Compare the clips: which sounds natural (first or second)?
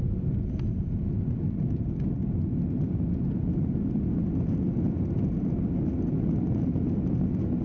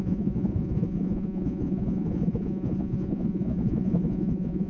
first